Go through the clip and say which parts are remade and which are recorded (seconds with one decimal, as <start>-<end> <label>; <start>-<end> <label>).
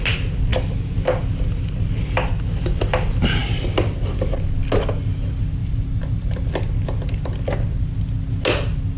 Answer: 0.0-5.6 recorded; 5.6-6.5 remade; 6.5-9.0 recorded